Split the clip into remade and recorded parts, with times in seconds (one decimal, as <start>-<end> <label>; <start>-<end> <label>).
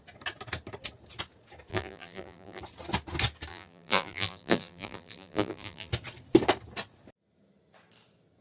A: 0.0-1.7 recorded; 1.7-2.6 remade; 2.6-3.5 recorded; 3.5-5.9 remade; 5.9-8.4 recorded